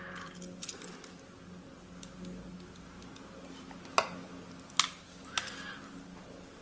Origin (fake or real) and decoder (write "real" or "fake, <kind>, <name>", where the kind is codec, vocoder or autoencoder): real